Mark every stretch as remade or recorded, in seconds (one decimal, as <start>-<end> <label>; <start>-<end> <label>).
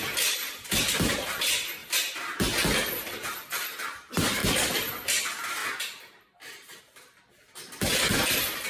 0.0-4.4 remade; 4.4-4.9 recorded; 4.9-5.6 remade; 5.6-6.8 recorded; 6.8-8.7 remade